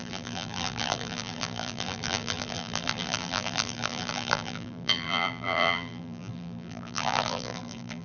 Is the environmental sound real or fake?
fake